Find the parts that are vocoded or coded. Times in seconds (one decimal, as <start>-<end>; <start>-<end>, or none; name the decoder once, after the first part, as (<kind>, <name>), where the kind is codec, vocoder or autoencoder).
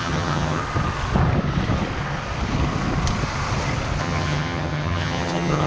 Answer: 0.0-0.6 (vocoder, HiFi-GAN); 4.0-5.7